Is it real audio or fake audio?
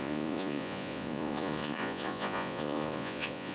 fake